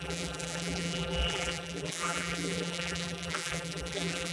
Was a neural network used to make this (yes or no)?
yes